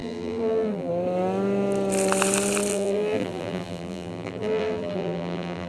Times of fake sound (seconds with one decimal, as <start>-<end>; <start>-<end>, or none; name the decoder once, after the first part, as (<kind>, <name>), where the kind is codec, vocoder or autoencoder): 0.0-0.9 (vocoder, BigVGAN v2); 2.7-5.7